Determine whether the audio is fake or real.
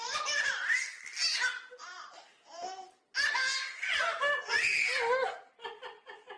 real